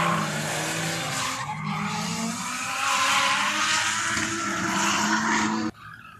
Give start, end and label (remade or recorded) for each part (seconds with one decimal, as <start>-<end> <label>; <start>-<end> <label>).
0.0-6.2 recorded